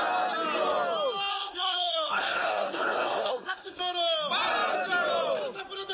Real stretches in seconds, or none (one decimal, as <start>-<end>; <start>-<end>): 0.0-1.3; 3.8-5.9